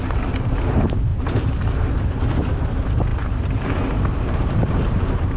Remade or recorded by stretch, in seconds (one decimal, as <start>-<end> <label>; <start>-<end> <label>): 0.0-5.4 remade